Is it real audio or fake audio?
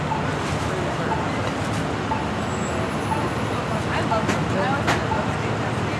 real